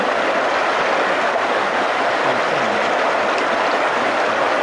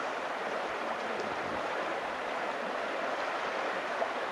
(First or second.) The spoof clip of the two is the second